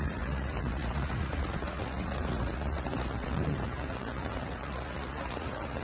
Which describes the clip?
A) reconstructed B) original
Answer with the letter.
A